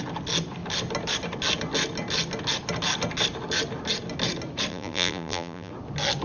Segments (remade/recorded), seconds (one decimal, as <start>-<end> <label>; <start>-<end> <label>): 0.0-4.7 recorded; 4.7-5.7 remade; 5.7-6.2 recorded